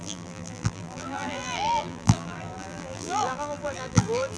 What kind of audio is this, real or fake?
fake